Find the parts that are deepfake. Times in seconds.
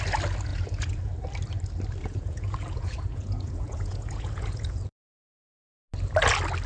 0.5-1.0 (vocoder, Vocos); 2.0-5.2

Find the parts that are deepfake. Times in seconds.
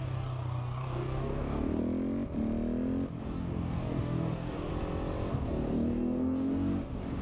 0.0-1.8 (codec, DAC); 3.2-4.7; 5.3-7.2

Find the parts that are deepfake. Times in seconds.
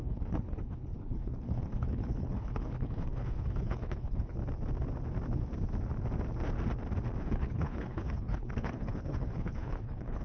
0.0-4.4 (codec, HILCodec); 7.2-10.2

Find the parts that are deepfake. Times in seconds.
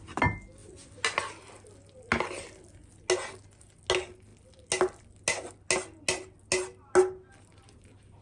none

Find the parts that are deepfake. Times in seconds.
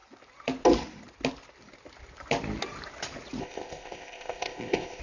3.4-5.0 (codec, ZipCodec)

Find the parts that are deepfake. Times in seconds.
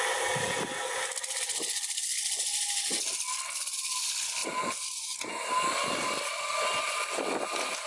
none